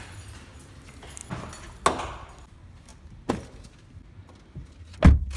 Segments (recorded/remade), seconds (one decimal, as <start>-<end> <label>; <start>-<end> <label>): 0.0-5.4 recorded